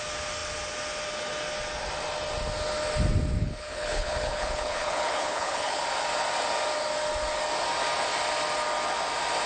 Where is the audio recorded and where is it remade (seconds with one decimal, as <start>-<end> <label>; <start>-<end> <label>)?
0.0-3.4 recorded; 3.4-5.8 remade; 5.8-9.5 recorded